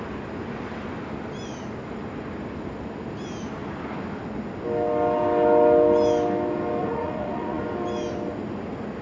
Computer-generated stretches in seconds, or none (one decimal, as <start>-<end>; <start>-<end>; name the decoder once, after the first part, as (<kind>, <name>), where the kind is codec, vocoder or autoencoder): 6.8-7.6 (vocoder, Vocos)